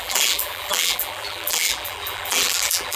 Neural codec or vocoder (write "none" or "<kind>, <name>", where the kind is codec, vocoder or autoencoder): vocoder, BigVGAN v2